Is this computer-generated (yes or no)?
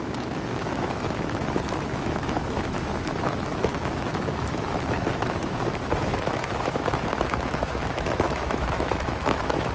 yes